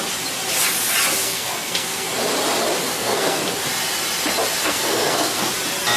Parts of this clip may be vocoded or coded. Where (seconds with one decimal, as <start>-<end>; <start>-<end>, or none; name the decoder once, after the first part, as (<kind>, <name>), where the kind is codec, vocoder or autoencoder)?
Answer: 1.2-2.1 (codec, SNAC); 2.8-3.4; 4.6-5.5